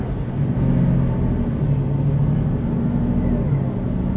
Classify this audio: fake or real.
real